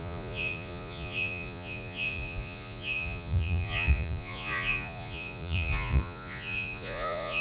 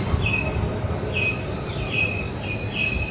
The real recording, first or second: second